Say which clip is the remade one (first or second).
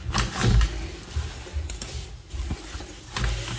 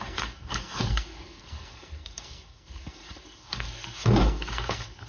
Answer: second